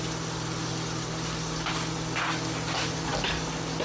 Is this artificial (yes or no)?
no